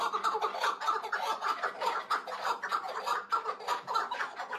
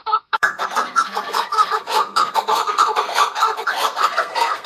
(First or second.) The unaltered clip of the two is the first